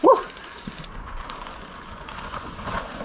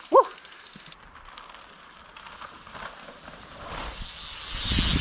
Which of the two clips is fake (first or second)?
first